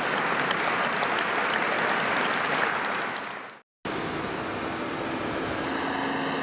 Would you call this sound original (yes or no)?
yes